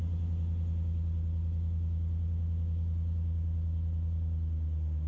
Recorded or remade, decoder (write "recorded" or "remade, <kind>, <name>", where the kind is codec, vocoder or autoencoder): recorded